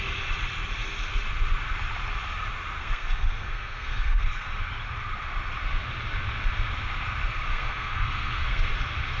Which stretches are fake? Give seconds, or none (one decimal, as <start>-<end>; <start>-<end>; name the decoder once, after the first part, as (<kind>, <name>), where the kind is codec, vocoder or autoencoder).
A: 2.8-4.7 (codec, SNAC); 7.5-8.7